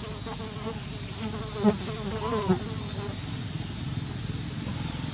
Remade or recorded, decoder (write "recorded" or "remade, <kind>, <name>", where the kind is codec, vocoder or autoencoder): recorded